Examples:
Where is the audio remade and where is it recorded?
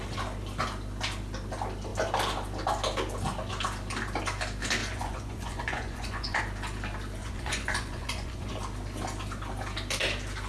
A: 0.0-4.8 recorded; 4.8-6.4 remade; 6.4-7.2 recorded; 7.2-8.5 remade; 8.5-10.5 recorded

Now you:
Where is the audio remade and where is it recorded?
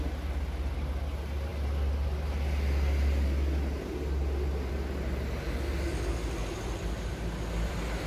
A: 0.0-6.4 recorded; 6.4-8.1 remade